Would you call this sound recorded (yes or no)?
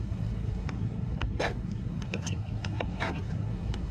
no